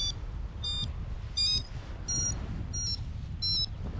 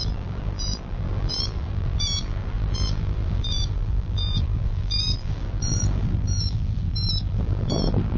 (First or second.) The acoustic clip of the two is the first